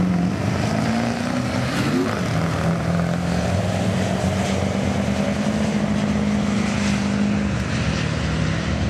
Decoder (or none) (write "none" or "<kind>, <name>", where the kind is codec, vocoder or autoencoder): none